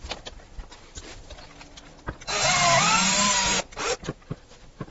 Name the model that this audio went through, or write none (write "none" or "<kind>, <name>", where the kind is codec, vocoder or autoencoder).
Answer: none